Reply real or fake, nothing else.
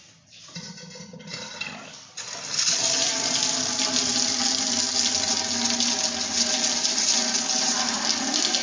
real